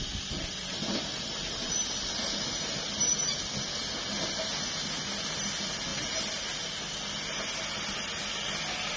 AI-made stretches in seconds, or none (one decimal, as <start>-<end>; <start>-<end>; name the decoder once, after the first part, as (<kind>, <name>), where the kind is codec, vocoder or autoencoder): none